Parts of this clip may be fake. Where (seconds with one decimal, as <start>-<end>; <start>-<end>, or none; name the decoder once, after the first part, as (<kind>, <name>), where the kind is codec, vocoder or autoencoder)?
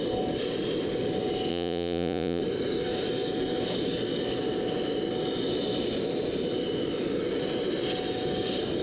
1.5-2.4 (vocoder, Vocos)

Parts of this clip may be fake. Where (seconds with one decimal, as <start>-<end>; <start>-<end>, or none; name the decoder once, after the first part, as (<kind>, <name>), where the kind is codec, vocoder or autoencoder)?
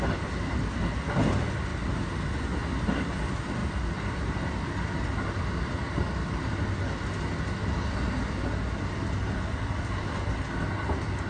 3.6-6.8 (vocoder, BigVGAN v2)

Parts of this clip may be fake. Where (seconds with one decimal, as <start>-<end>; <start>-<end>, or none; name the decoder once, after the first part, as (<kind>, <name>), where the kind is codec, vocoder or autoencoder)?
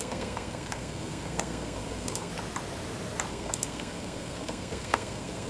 0.0-2.3 (codec, SNAC); 3.3-5.5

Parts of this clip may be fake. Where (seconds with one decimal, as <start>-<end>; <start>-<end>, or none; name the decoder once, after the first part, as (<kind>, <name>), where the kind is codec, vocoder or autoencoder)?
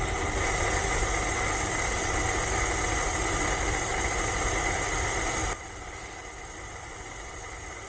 none